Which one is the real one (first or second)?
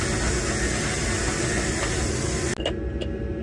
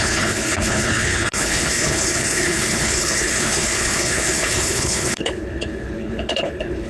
first